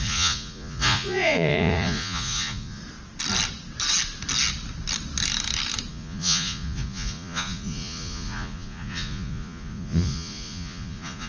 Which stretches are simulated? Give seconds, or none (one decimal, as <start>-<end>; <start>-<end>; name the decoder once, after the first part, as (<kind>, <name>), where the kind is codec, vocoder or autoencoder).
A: 0.0-2.8 (vocoder, Vocos); 5.9-11.3